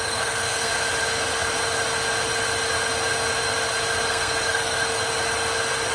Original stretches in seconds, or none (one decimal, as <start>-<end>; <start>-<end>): 0.7-4.1; 5.0-5.9